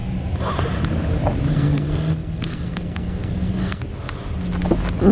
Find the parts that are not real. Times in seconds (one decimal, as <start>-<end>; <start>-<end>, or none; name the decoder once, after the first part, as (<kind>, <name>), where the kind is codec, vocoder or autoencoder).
1.5-3.8 (codec, SNAC)